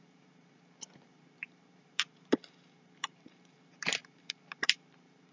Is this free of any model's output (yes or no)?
no